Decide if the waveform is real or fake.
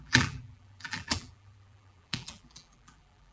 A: fake